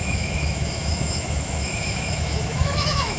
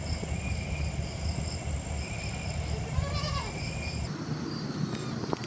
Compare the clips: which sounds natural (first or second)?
second